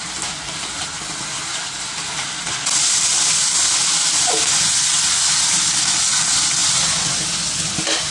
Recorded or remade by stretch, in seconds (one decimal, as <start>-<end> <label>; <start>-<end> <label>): 0.0-8.1 recorded